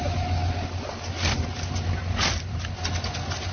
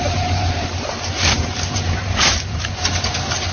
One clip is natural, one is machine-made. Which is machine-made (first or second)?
second